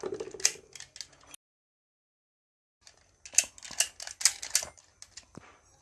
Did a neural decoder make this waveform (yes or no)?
no